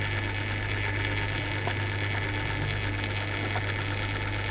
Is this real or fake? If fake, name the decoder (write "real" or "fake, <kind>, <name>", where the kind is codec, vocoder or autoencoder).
real